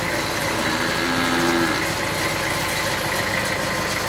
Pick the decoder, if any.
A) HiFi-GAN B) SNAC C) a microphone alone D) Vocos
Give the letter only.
C